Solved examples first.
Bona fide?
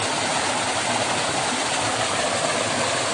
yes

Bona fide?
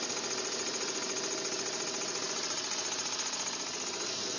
yes